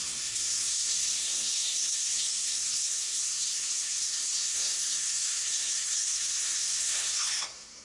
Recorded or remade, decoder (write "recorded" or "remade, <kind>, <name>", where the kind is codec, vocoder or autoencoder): remade, codec, SNAC